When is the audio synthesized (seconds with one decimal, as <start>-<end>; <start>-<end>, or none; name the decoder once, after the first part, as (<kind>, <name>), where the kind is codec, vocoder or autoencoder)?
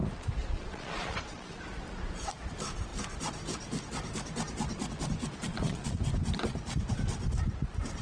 0.4-1.6 (vocoder, Vocos); 5.5-6.0